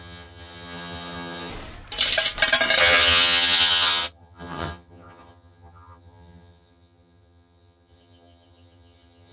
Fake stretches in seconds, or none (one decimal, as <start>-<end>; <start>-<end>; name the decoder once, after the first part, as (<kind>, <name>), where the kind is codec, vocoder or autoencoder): 0.0-1.5 (vocoder, HiFi-GAN); 2.8-9.3